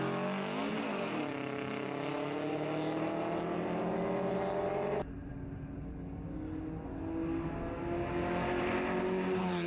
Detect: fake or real real